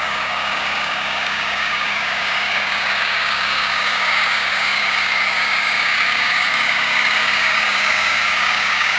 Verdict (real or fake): fake